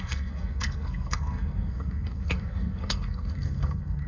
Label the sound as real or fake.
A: fake